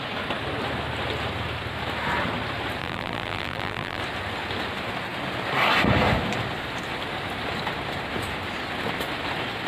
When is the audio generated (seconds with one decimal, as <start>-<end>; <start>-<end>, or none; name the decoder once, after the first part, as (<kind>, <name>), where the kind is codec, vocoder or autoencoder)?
2.8-4.0 (vocoder, BigVGAN v2)